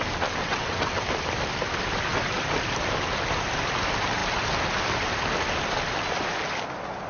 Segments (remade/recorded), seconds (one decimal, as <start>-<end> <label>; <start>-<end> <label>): 0.0-0.4 recorded; 0.4-0.9 remade; 0.9-7.1 recorded